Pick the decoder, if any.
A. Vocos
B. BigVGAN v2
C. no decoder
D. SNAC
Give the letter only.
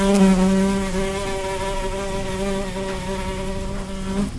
C